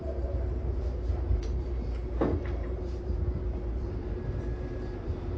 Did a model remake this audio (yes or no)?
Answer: yes